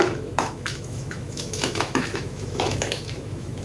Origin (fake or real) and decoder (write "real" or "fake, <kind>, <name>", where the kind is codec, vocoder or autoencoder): fake, autoencoder, DAC-VAE